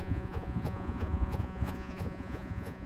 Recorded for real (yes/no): no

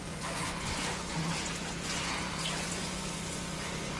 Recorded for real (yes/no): no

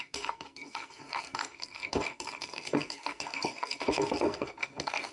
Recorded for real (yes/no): no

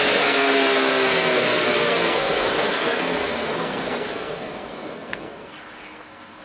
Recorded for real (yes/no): no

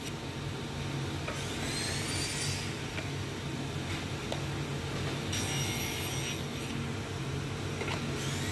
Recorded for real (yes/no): yes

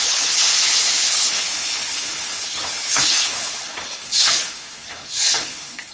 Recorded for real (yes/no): no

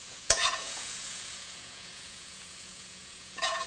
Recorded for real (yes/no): no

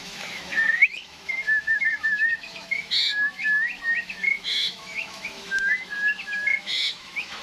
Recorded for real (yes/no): no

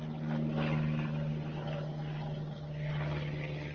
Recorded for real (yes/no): yes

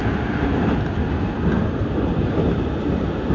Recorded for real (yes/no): yes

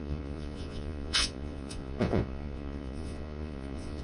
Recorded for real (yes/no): no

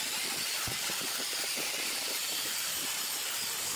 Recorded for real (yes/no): no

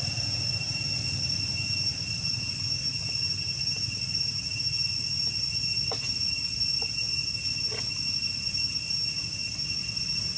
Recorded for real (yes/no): yes